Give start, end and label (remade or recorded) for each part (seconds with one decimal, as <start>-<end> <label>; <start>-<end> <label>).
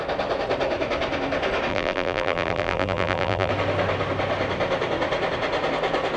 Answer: 0.0-1.7 recorded; 1.7-3.5 remade; 3.5-6.2 recorded